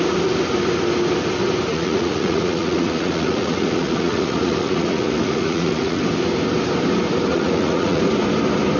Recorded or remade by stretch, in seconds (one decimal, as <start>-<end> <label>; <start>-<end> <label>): 0.0-1.7 recorded; 1.7-6.0 remade; 6.0-7.3 recorded; 7.3-8.0 remade; 8.0-8.8 recorded